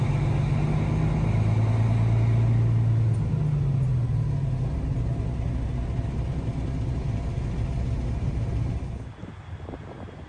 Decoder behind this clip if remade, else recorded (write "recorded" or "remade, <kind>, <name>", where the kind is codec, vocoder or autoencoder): recorded